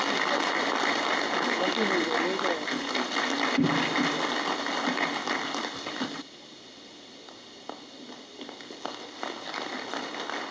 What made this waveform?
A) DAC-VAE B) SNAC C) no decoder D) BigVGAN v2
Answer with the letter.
C